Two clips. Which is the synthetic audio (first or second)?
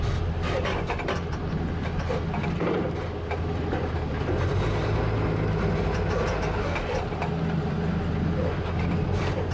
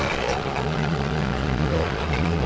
second